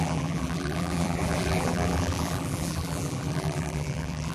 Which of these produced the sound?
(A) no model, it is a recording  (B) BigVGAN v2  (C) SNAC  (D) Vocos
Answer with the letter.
B